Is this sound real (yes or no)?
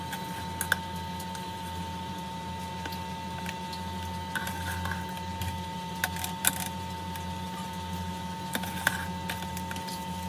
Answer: yes